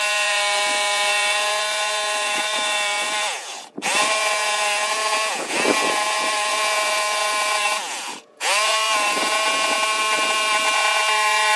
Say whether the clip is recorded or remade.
remade